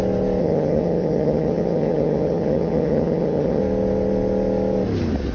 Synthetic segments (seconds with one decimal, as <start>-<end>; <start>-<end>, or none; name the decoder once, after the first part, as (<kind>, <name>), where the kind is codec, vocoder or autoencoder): 0.4-3.6 (vocoder, HiFi-GAN)